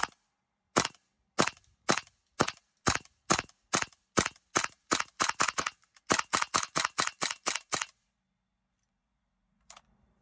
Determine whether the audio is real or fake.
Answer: real